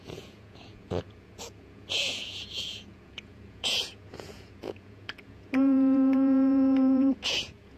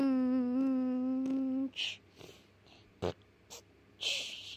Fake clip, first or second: first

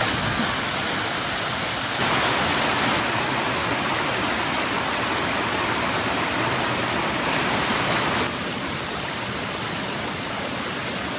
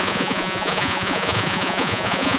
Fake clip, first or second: second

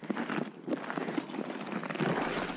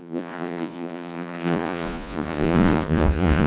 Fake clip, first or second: second